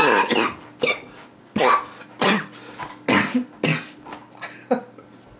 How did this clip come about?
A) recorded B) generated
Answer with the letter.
A